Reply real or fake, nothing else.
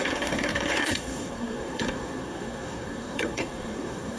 fake